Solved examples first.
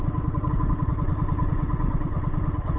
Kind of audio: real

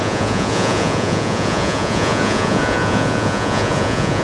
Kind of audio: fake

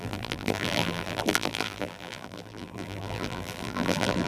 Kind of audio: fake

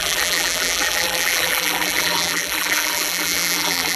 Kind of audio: fake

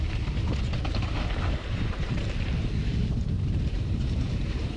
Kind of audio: fake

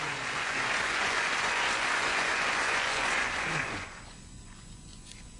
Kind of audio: fake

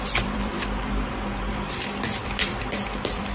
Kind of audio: fake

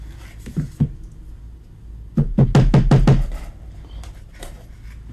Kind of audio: real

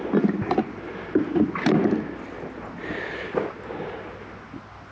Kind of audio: real